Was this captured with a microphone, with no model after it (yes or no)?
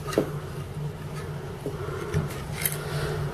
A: yes